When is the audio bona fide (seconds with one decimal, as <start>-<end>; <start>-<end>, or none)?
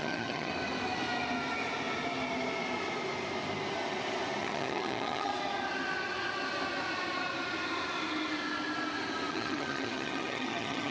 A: 0.5-4.4; 5.3-9.3